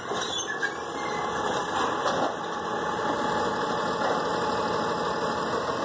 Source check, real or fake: real